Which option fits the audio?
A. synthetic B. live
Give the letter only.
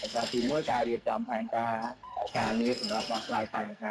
A